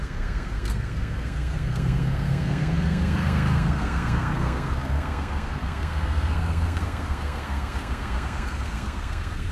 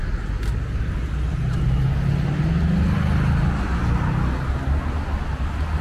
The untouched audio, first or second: second